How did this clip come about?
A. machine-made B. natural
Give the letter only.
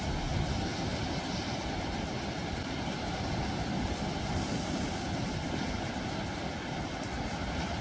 B